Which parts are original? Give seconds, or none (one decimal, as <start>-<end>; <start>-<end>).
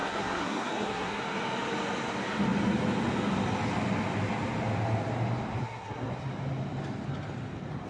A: 1.2-5.6; 6.1-7.9